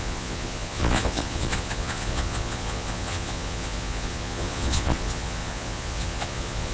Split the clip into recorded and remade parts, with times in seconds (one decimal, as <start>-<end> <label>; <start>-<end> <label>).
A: 0.0-6.7 remade